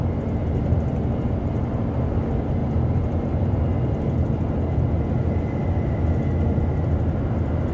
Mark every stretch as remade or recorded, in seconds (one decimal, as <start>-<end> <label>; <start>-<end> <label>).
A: 0.0-0.4 recorded; 0.4-2.0 remade; 2.0-2.6 recorded; 2.6-3.6 remade; 3.6-7.7 recorded